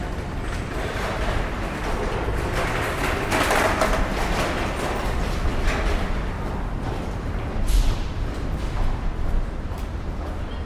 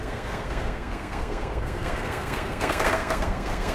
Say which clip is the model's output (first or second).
second